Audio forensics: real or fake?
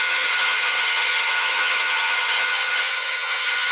fake